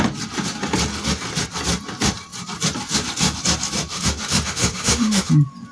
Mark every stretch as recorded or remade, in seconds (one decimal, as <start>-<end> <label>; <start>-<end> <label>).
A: 0.0-3.9 recorded; 3.9-5.3 remade; 5.3-5.7 recorded